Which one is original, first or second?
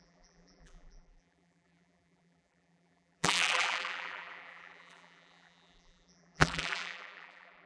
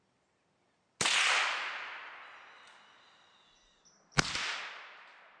second